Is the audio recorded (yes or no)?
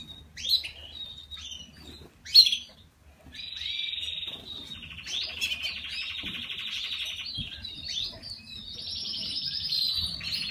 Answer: yes